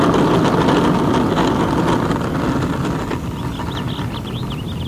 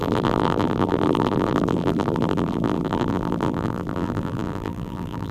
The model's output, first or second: second